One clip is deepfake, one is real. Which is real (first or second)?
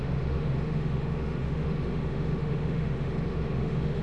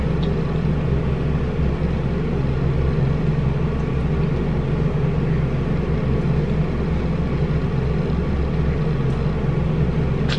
second